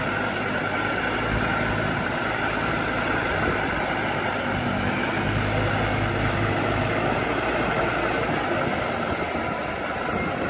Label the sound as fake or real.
real